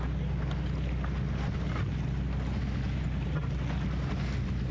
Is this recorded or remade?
recorded